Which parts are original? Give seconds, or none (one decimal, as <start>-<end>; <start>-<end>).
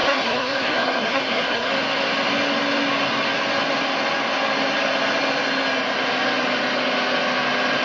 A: 1.7-7.8